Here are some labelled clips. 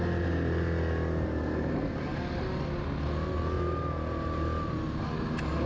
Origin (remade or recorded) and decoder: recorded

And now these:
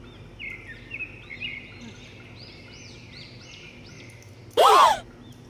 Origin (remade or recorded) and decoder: recorded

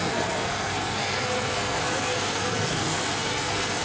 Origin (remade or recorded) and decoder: remade, codec, SNAC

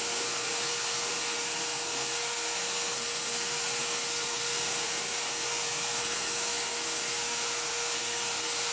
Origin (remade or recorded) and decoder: remade, codec, SNAC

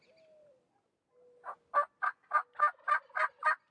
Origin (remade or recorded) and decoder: recorded